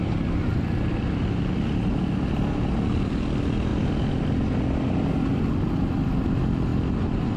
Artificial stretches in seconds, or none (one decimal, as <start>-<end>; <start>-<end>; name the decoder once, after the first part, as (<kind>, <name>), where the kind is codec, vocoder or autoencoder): none